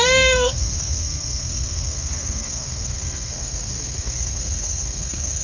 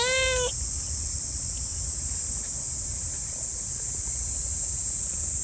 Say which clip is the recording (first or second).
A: second